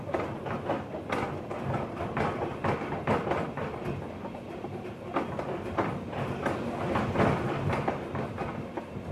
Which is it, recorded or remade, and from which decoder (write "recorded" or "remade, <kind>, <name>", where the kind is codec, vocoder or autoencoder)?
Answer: recorded